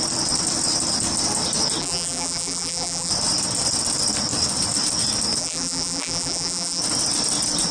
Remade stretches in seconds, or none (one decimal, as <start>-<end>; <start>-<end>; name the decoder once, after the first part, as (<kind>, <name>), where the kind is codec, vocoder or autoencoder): 1.8-3.1 (vocoder, BigVGAN v2); 5.4-6.8